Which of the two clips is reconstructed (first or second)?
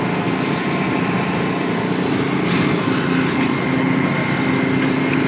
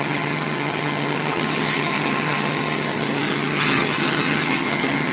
second